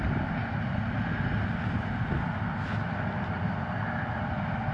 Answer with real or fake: real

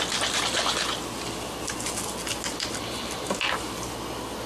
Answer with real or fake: real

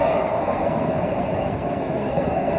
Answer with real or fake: fake